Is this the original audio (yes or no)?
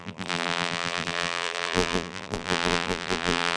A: no